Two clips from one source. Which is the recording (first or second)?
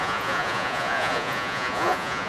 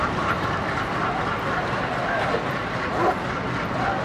second